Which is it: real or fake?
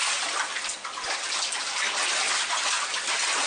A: real